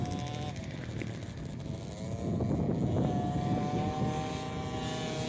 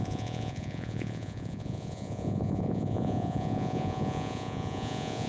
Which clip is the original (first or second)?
first